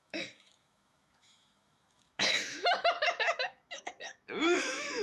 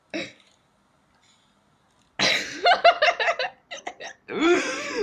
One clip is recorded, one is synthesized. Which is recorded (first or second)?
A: second